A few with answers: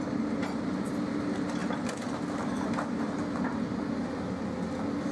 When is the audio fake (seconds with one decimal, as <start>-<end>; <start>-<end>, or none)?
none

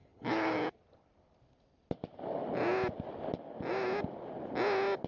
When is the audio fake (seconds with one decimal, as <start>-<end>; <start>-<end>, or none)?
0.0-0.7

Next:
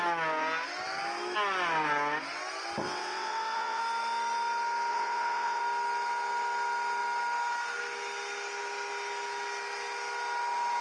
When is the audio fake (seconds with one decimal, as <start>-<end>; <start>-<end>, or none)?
2.8-3.8; 4.9-5.6

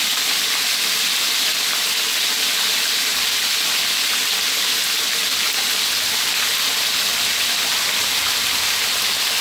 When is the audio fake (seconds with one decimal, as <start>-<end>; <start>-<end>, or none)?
none

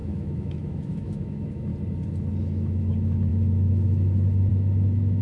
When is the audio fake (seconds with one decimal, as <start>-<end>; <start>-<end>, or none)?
0.0-1.7; 2.4-5.2

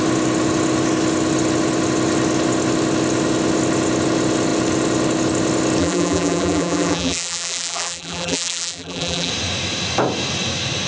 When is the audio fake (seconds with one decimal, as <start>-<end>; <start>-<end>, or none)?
5.8-9.3

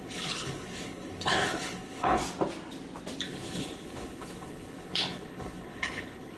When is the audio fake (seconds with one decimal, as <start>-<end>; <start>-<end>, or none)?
0.0-2.2; 3.2-6.4

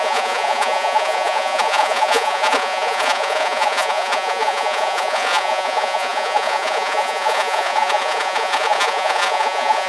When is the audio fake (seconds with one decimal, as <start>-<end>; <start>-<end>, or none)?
0.0-9.9